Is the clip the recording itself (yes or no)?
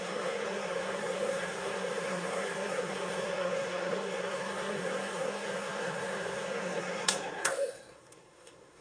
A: no